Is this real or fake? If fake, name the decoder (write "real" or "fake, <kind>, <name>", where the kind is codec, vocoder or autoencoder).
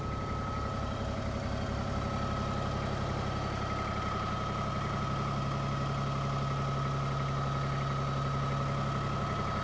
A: real